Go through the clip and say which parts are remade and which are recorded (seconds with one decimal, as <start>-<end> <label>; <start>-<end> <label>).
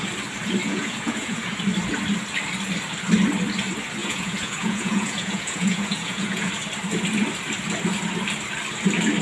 0.0-0.6 recorded; 0.6-1.6 remade; 1.6-4.0 recorded; 4.0-6.5 remade; 6.5-9.2 recorded